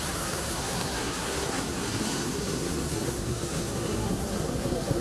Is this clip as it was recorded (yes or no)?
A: no